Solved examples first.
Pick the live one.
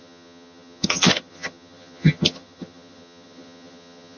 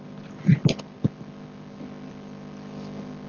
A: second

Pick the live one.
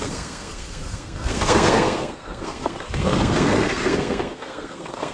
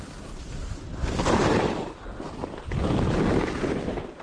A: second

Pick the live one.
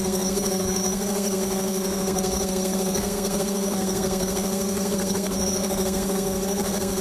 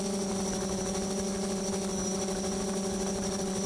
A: second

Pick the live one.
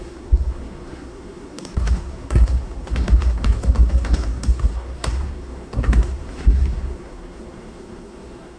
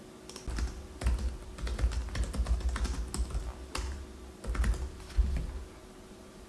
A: second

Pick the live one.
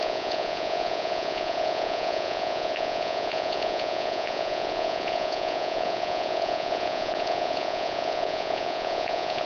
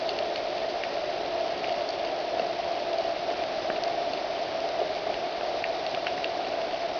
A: second